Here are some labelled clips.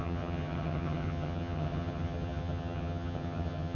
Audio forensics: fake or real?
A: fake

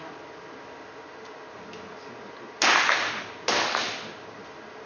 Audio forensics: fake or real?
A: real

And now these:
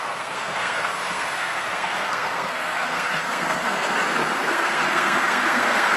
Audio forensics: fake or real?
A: fake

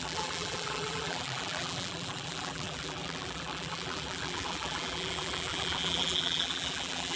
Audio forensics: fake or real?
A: fake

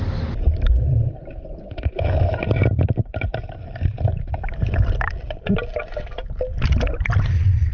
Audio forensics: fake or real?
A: real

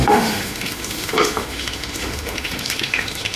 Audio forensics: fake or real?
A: fake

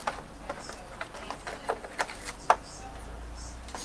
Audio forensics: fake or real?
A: real